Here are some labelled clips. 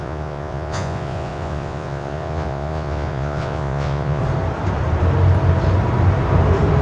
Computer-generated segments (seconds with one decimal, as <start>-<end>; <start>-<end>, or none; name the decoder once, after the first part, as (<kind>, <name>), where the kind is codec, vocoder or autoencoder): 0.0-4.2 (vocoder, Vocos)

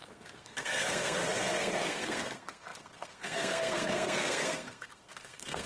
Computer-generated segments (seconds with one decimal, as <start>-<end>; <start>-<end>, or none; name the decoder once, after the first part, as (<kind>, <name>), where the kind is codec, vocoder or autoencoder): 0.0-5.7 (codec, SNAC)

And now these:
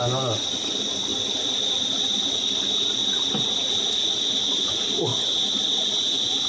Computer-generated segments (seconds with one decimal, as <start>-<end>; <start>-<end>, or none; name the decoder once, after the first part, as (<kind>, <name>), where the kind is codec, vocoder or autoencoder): none

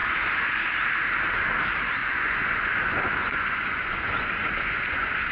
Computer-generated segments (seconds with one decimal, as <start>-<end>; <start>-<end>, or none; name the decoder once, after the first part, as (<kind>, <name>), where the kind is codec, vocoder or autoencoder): 0.0-0.6 (vocoder, Vocos); 2.0-5.3

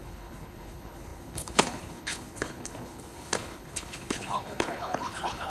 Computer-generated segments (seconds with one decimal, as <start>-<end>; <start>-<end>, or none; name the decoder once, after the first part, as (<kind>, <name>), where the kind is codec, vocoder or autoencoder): 0.0-5.5 (codec, HILCodec)